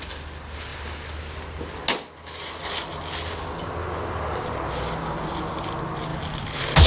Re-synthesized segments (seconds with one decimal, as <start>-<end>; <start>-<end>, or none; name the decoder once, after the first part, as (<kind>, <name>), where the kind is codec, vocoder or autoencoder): none